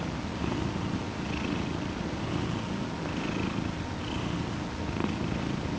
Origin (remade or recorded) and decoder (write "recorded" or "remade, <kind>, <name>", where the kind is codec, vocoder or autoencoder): recorded